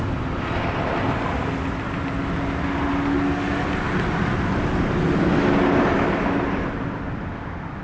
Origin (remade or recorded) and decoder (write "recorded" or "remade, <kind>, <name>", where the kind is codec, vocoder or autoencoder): recorded